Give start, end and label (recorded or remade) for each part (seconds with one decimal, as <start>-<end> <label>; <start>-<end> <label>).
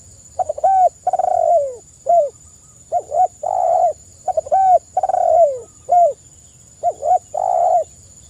0.0-1.3 recorded; 1.3-5.8 remade; 5.8-8.3 recorded